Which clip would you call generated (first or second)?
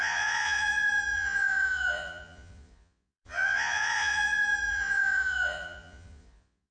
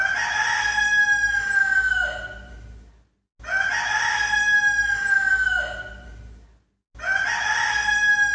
first